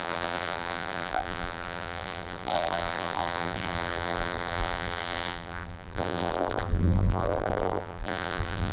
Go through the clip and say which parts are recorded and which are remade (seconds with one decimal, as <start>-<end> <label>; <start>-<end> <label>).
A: 0.0-8.7 remade